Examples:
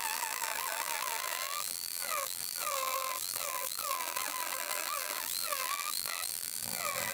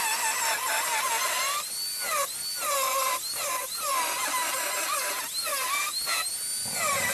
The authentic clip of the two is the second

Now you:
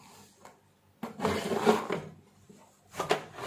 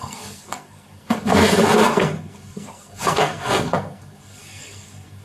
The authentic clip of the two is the first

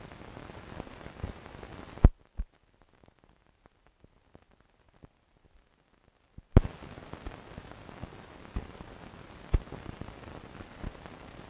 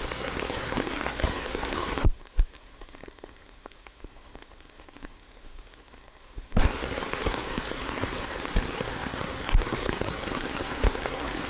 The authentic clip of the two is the first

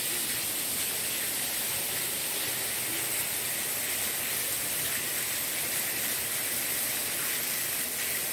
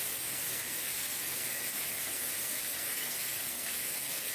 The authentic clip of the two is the first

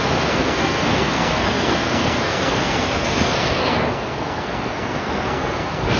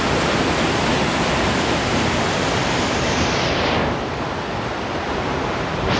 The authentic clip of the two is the second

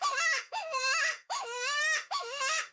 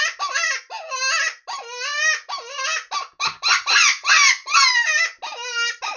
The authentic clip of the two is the second